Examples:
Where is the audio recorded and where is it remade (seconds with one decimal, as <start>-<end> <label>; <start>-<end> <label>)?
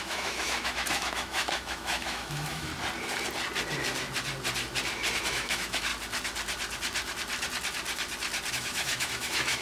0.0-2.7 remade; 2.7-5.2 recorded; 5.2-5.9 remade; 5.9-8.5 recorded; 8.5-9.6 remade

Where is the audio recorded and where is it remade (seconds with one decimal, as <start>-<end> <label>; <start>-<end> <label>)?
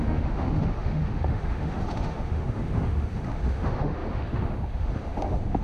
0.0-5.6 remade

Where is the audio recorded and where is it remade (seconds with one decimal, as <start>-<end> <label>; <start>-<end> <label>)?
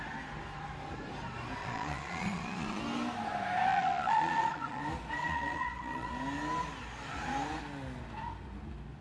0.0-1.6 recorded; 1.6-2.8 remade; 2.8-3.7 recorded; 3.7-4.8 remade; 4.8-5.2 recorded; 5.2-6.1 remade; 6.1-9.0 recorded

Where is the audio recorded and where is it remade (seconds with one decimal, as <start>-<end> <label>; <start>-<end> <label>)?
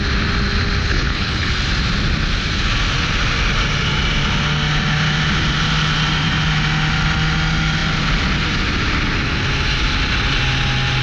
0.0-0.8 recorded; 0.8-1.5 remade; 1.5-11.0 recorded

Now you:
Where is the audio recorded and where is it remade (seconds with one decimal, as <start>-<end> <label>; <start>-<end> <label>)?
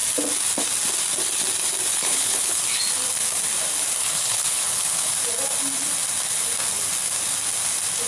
0.0-1.9 recorded; 1.9-2.6 remade; 2.6-4.0 recorded; 4.0-5.1 remade; 5.1-8.1 recorded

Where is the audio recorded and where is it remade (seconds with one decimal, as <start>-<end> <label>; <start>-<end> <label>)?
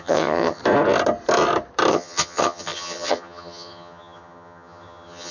0.0-0.6 remade; 0.6-1.9 recorded; 1.9-5.3 remade